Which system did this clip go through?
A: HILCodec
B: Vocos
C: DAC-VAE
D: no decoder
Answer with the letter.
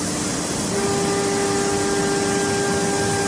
D